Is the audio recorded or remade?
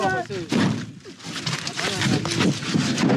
recorded